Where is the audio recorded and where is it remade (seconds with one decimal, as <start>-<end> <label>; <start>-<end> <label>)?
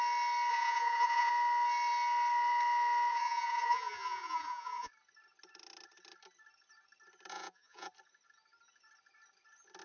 0.0-0.5 recorded; 0.5-1.3 remade; 1.3-3.1 recorded; 3.1-4.9 remade; 4.9-7.3 recorded; 7.3-7.9 remade; 7.9-9.8 recorded